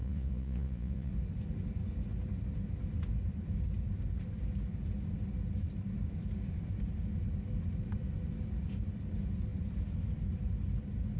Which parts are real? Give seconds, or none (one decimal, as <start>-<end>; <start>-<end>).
1.1-11.2